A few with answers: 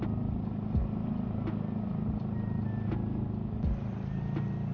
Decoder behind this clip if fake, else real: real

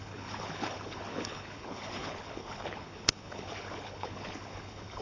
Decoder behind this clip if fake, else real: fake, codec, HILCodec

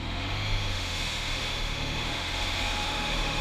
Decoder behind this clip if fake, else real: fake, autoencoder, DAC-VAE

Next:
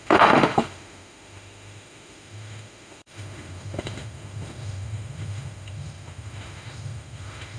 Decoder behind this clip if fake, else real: fake, autoencoder, DAC-VAE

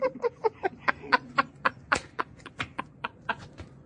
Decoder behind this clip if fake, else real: fake, vocoder, Vocos